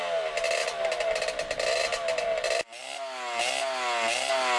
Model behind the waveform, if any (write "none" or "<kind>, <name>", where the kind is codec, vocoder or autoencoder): none